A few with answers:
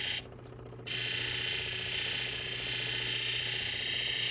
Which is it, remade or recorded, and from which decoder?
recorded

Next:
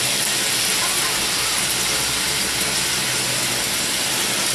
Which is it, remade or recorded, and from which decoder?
recorded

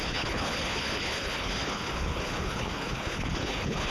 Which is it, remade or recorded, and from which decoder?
remade, codec, HILCodec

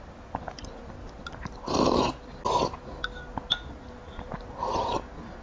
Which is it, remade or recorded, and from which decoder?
recorded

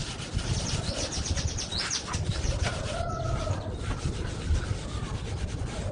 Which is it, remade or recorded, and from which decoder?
recorded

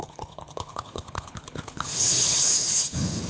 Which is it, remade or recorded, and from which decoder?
remade, codec, HILCodec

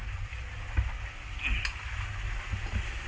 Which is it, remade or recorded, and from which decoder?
recorded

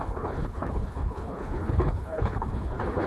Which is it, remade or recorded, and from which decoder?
remade, codec, HILCodec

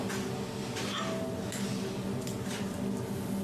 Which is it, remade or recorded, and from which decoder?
recorded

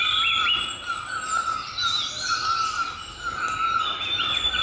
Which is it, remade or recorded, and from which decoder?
recorded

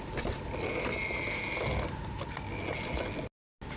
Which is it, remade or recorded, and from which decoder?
recorded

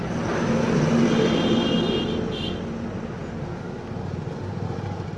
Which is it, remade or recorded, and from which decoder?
recorded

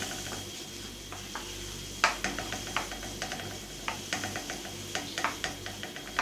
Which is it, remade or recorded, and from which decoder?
recorded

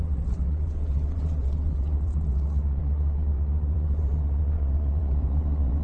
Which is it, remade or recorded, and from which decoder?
remade, vocoder, WaveNeXt